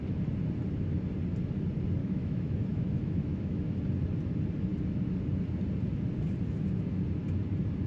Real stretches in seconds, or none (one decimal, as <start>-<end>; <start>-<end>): 0.0-2.0; 3.8-7.9